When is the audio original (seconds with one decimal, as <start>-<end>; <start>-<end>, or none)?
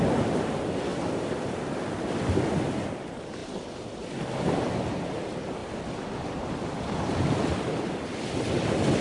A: 0.0-0.9; 1.5-3.4; 4.1-9.0